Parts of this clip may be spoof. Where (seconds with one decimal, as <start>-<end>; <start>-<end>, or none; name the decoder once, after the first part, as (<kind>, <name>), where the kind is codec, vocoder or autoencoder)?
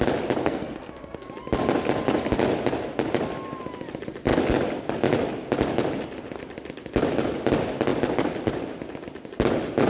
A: 0.4-1.3 (codec, SNAC)